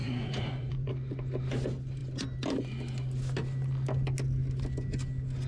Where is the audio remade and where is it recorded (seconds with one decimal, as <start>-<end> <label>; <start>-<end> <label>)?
0.0-0.9 remade; 0.9-5.5 recorded

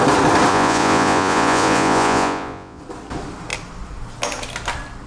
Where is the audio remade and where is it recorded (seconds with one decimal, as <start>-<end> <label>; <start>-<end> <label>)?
0.0-0.5 recorded; 0.5-2.8 remade; 2.8-5.1 recorded

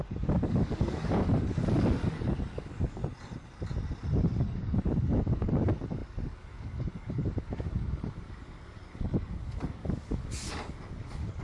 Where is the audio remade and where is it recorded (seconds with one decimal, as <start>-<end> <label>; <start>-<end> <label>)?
0.0-3.0 remade; 3.0-4.2 recorded; 4.2-11.4 remade

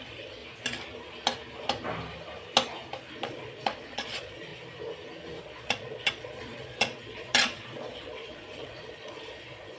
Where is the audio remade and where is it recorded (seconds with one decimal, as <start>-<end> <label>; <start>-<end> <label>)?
0.0-0.4 remade; 0.4-3.1 recorded; 3.1-4.5 remade; 4.5-5.4 recorded; 5.4-9.8 remade

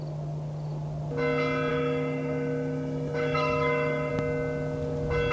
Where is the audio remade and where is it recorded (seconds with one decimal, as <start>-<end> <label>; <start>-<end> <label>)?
0.0-1.7 recorded; 1.7-4.1 remade; 4.1-5.3 recorded

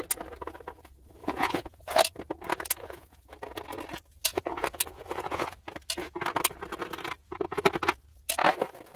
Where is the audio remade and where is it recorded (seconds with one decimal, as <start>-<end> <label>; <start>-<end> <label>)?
0.0-1.2 recorded; 1.2-2.0 remade; 2.0-2.8 recorded; 2.8-3.3 remade; 3.3-4.2 recorded; 4.2-5.6 remade; 5.6-9.0 recorded

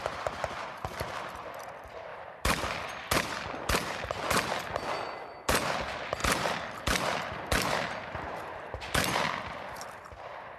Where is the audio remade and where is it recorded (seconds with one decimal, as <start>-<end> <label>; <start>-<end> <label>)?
0.0-10.6 recorded

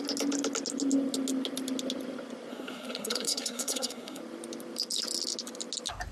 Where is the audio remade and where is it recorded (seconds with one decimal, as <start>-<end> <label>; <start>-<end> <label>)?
0.0-2.5 recorded; 2.5-4.2 remade; 4.2-6.1 recorded